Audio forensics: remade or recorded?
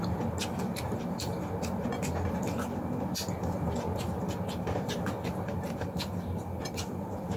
recorded